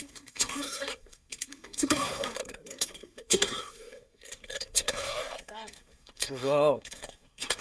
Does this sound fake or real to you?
fake